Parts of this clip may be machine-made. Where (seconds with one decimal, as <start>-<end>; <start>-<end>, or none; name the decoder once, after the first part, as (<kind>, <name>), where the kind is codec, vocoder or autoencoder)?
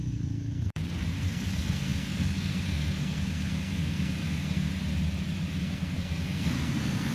0.0-4.7 (codec, SNAC); 5.5-7.1